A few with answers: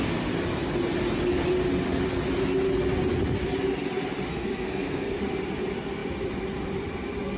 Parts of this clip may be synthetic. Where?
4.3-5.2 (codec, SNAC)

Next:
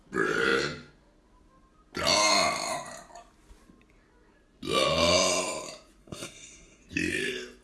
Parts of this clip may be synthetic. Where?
6.0-6.8 (codec, SNAC)

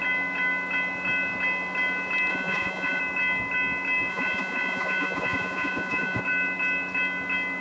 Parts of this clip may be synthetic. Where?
2.3-3.0 (vocoder, Vocos); 4.1-6.2

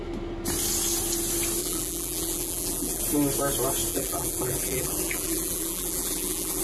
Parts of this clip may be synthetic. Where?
1.6-3.0 (vocoder, BigVGAN v2); 3.9-6.6

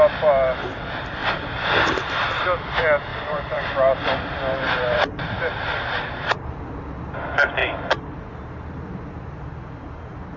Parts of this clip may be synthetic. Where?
3.1-6.6 (vocoder, BigVGAN v2)